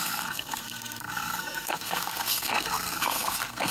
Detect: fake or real fake